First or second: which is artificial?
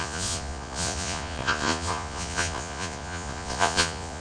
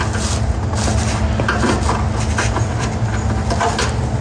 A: first